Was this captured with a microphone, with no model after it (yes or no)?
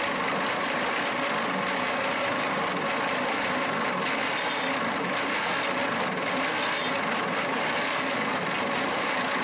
yes